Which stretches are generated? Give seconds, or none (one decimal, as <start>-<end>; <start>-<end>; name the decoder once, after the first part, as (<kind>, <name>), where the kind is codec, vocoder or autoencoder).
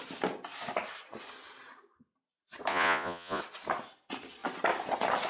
2.7-3.4 (vocoder, Vocos)